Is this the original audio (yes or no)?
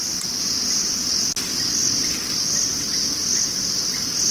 yes